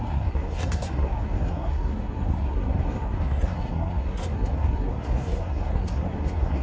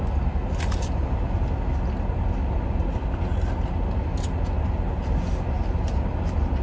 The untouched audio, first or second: second